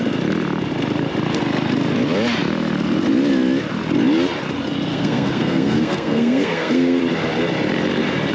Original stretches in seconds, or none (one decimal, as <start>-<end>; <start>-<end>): 0.0-4.9; 7.0-8.3